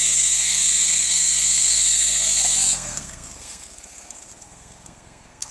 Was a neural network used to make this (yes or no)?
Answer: yes